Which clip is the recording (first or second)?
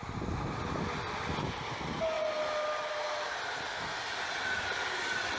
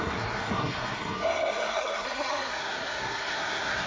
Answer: first